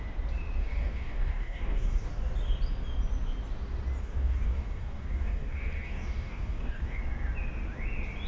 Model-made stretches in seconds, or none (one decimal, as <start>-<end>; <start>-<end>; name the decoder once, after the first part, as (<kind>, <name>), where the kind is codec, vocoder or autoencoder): 0.6-2.1 (codec, DAC); 4.0-7.0